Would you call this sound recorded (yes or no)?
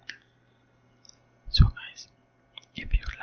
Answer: yes